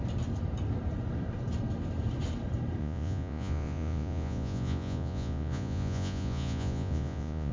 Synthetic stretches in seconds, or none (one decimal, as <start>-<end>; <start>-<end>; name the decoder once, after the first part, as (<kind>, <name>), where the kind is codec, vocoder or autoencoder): 2.8-7.5 (vocoder, Vocos)